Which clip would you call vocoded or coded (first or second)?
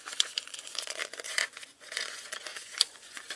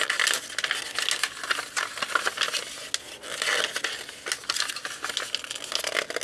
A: first